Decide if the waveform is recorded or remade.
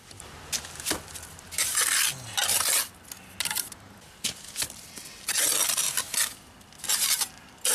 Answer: recorded